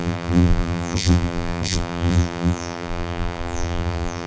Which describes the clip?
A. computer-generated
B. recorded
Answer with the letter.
A